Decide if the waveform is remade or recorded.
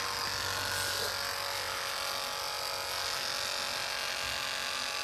recorded